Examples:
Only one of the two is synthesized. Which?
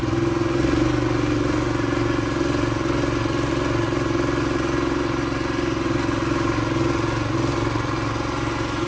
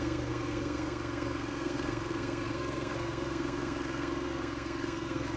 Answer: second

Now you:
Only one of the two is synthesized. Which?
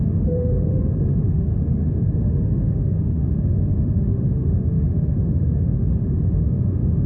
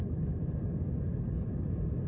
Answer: first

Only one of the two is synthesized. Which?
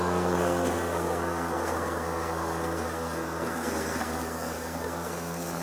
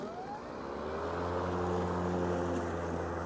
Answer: first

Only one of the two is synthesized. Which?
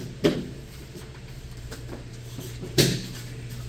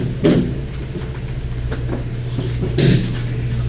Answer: first